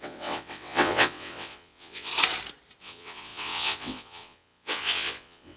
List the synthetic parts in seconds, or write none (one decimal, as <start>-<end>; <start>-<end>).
0.0-2.1; 2.8-5.6